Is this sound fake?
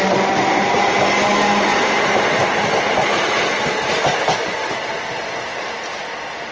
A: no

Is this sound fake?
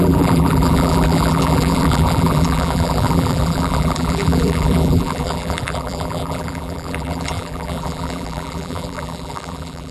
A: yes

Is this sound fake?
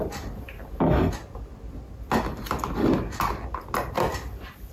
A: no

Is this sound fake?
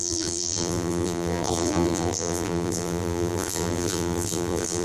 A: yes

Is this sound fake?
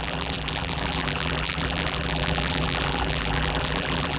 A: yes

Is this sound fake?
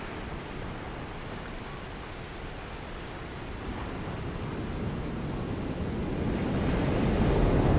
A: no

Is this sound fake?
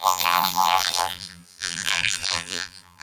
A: yes